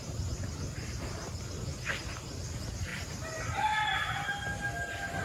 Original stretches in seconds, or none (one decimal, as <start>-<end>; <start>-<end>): 0.0-5.2